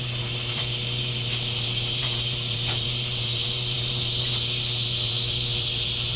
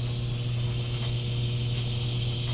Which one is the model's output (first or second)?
first